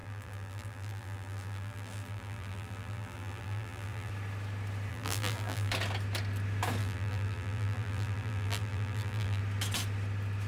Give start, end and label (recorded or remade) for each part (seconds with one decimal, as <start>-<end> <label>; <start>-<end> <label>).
0.0-4.1 remade; 4.1-4.9 recorded; 4.9-5.7 remade; 5.7-6.8 recorded; 6.8-9.4 remade; 9.4-10.5 recorded